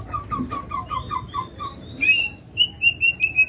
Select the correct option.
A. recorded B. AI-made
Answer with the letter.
A